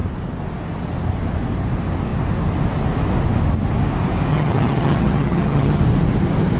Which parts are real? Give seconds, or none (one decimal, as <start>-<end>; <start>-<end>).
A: 0.0-4.3; 5.8-6.6